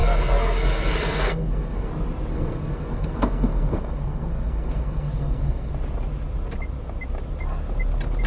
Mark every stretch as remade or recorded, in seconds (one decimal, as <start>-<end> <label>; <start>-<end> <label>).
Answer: 0.0-1.9 remade; 1.9-2.3 recorded; 2.3-5.7 remade; 5.7-8.3 recorded